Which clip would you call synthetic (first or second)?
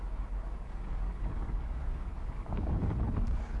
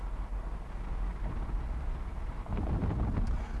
first